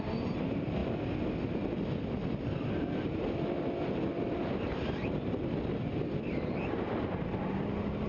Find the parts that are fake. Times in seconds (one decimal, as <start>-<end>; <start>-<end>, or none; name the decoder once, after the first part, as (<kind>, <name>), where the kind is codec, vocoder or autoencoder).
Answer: none